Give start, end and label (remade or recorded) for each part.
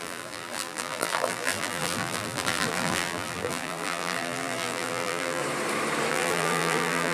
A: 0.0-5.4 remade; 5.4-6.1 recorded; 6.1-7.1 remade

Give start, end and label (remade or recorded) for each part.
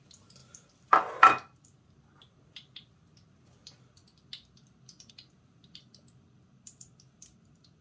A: 0.0-7.8 remade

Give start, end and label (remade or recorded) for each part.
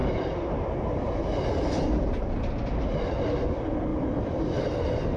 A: 0.0-5.2 recorded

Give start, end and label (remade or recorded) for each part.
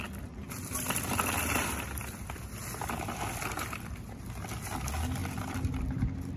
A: 0.0-0.4 recorded; 0.4-4.2 remade; 4.2-5.2 recorded; 5.2-5.8 remade; 5.8-6.4 recorded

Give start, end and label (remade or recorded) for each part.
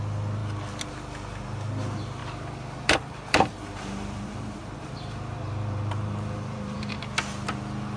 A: 0.0-2.2 recorded; 2.2-7.0 remade; 7.0-8.0 recorded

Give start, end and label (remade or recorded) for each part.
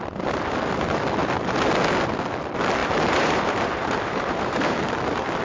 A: 0.0-2.8 recorded; 2.8-4.7 remade; 4.7-5.4 recorded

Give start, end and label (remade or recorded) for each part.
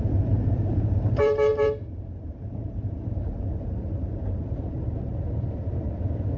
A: 0.0-5.1 remade; 5.1-6.4 recorded